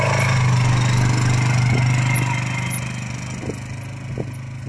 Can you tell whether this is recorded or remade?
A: recorded